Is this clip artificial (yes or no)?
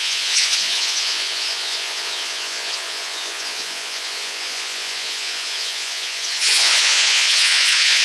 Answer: yes